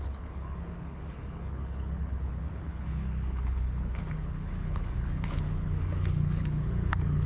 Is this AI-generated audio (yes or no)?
yes